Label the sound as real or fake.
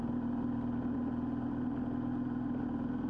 real